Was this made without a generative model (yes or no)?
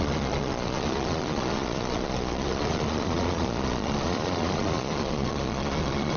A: no